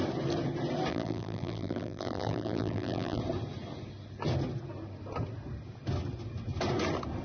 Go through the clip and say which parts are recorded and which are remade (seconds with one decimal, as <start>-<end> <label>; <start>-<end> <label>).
0.0-0.9 recorded; 0.9-3.2 remade; 3.2-7.2 recorded